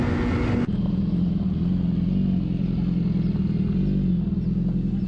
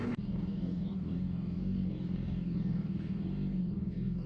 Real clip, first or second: first